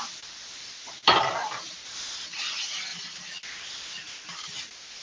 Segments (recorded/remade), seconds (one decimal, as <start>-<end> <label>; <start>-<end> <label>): 0.0-5.0 recorded